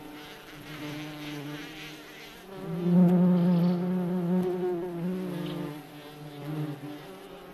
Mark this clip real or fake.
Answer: real